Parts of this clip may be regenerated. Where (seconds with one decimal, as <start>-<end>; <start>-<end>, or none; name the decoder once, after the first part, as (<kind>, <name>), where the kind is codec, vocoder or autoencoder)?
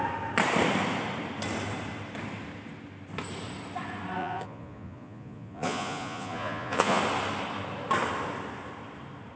4.2-7.0 (vocoder, Vocos)